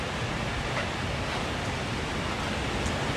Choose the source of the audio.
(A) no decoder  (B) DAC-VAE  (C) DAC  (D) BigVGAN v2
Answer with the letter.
A